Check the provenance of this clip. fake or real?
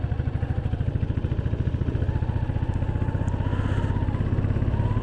real